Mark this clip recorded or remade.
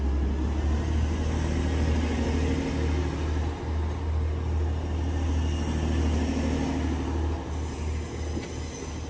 recorded